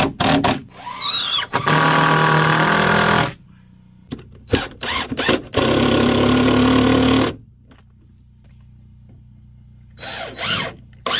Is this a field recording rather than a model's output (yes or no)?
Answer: yes